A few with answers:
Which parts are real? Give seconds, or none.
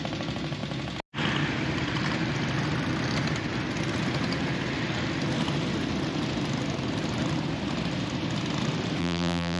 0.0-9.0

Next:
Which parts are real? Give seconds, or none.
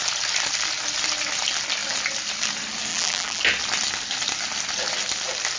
0.0-2.9; 3.4-5.6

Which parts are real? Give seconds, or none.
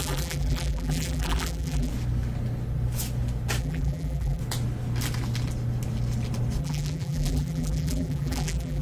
1.9-3.6; 4.4-6.6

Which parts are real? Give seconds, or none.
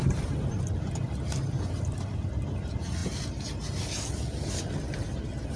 3.0-4.9